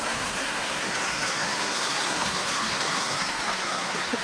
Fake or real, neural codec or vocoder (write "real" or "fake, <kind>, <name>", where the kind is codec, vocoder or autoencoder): fake, codec, SNAC